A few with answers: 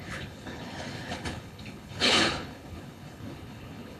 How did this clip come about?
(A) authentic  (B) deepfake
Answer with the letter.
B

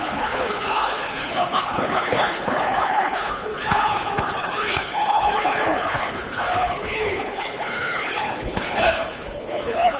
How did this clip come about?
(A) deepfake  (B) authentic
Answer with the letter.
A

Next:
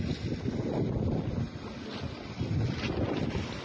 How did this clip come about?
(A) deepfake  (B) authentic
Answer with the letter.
B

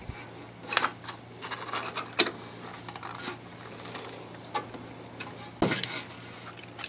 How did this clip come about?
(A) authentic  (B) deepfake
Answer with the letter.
A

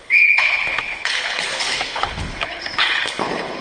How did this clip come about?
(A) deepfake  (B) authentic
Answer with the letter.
A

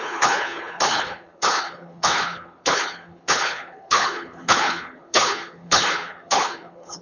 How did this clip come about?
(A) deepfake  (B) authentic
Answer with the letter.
A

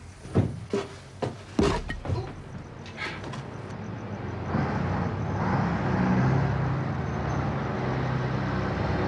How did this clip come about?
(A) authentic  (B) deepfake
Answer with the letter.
A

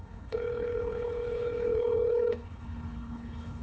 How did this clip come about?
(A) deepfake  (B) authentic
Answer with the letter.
A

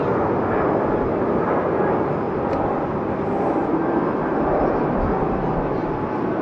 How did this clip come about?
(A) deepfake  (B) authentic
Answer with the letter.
B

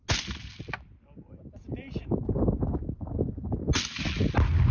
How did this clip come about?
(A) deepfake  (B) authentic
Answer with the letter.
B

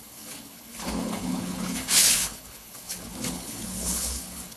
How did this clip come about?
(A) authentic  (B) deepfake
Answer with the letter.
B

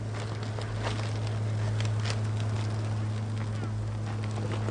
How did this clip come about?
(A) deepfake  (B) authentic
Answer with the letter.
B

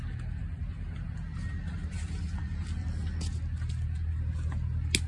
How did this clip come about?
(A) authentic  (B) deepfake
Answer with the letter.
A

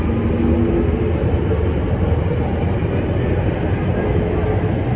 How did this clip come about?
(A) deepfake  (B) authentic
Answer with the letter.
B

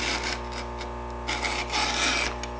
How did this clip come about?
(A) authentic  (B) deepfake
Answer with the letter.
A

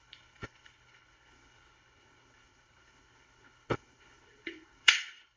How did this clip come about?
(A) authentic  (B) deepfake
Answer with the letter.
B